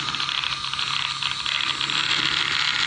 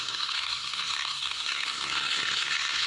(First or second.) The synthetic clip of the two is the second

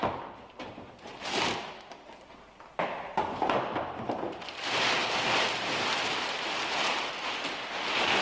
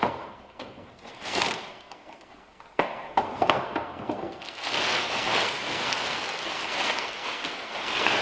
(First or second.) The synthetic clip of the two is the second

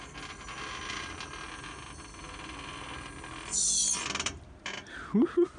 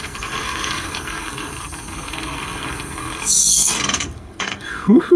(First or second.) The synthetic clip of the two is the second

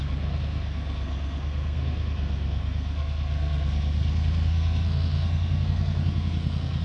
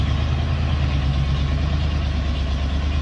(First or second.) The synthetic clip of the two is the first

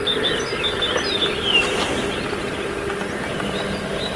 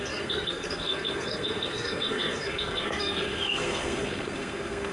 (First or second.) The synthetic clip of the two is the second